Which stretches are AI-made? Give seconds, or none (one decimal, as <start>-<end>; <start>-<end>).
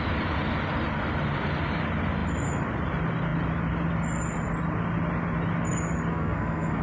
6.1-6.8